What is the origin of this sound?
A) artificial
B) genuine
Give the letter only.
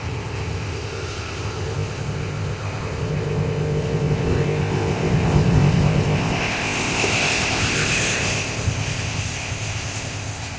A